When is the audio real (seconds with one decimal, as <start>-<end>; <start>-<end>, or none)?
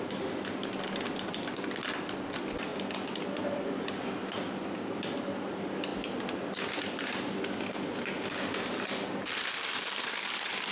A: 0.0-10.7